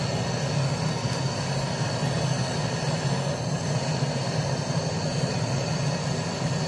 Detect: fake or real real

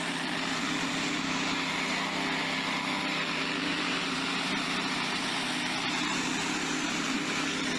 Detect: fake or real fake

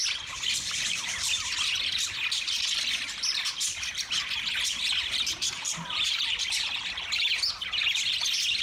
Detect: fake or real fake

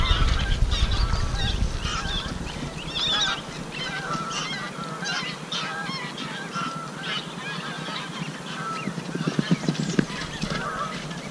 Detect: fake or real real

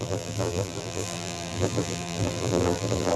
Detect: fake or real fake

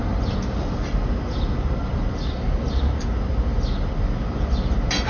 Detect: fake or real real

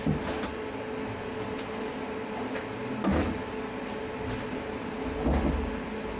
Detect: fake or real real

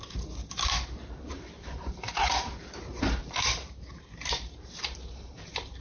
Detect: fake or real fake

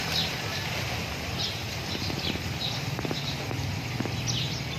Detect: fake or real fake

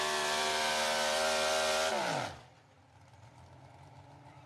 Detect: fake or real real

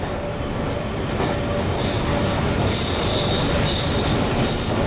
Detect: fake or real real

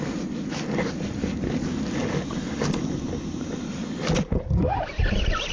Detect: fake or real real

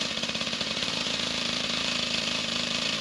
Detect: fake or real fake